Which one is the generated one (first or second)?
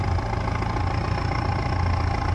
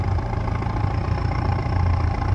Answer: second